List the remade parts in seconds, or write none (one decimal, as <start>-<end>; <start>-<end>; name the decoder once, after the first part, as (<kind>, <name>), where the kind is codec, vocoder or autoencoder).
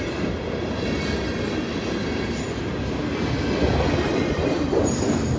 none